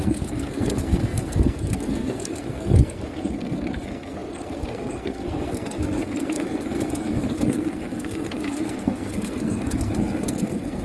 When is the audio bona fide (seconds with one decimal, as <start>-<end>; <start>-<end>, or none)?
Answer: none